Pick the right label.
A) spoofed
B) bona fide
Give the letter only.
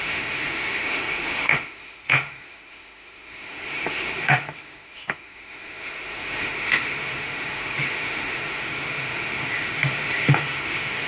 A